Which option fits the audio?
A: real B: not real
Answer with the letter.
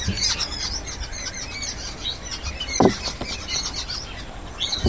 A